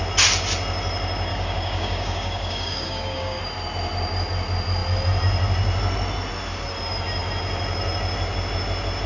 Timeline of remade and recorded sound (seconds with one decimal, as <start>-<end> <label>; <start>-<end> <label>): 0.0-1.3 recorded; 1.3-3.4 remade; 3.4-9.1 recorded